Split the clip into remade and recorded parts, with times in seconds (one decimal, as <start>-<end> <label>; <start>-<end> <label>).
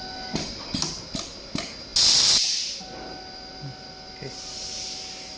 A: 0.0-5.4 recorded